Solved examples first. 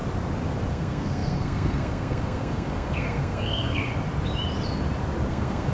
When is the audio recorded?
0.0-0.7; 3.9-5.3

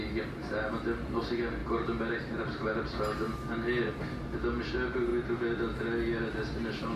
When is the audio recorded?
0.0-7.0